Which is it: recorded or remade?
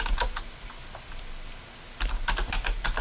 recorded